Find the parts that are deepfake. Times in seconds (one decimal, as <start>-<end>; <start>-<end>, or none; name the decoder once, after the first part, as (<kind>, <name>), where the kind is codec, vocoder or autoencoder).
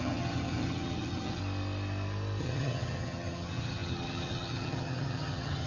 0.0-1.4 (vocoder, HiFi-GAN); 2.4-5.7